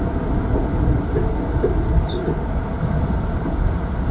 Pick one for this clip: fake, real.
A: real